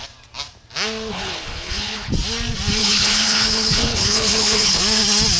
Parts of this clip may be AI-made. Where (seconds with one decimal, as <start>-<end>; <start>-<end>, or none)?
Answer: 1.1-2.1; 2.8-4.8